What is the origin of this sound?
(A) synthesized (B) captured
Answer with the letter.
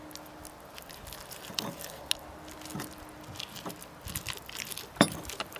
B